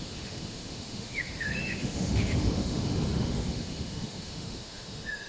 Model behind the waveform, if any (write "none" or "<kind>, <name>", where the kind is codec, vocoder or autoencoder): autoencoder, DAC-VAE